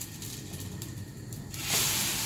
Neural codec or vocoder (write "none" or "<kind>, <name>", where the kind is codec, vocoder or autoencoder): vocoder, BigVGAN v2